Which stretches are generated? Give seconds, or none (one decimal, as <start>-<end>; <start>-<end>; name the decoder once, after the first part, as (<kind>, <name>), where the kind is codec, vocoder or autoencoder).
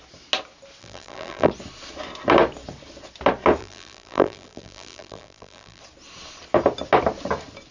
0.8-1.5 (vocoder, BigVGAN v2); 3.6-5.8